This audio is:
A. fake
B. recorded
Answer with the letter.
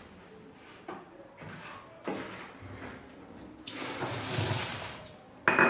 B